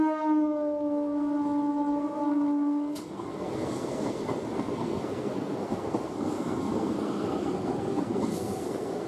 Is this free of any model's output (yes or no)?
no